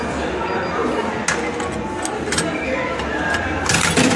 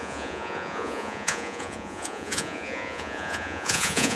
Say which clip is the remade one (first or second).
second